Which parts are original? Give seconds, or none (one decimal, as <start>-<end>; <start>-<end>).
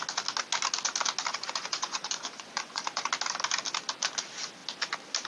0.0-1.3; 3.1-5.3